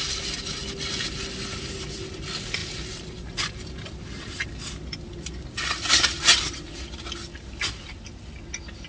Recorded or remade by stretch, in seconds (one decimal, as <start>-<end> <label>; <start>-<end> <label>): 0.0-8.9 recorded